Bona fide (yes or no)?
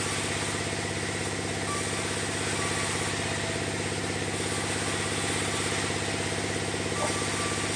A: yes